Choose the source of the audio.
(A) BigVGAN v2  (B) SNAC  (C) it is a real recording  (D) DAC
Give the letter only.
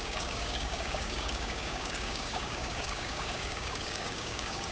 D